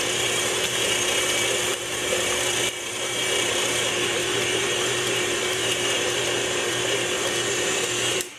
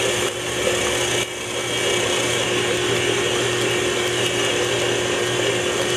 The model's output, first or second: first